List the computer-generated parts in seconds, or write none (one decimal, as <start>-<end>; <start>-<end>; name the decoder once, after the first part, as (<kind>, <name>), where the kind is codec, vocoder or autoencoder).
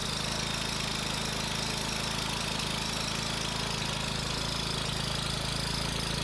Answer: none